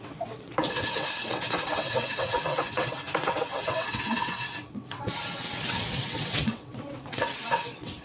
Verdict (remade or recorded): remade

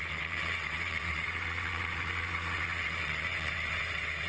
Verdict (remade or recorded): remade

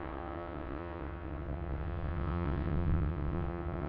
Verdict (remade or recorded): remade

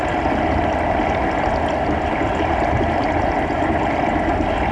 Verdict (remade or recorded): recorded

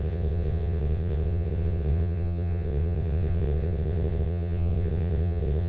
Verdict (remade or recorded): remade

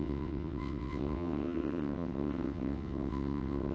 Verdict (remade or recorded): remade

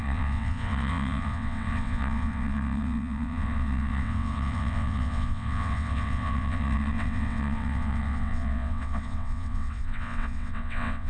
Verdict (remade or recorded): remade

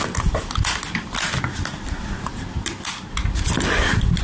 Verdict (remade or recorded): recorded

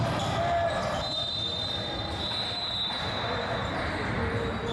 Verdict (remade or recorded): recorded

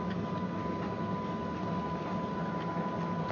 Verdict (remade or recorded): recorded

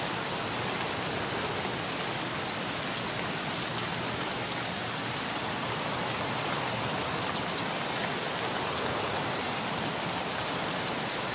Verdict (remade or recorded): recorded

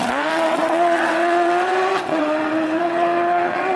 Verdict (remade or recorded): remade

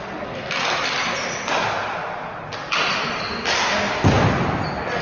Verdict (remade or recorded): recorded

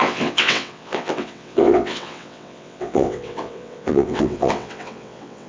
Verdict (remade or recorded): remade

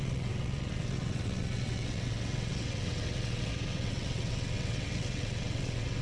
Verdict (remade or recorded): remade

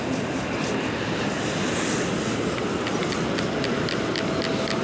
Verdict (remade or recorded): recorded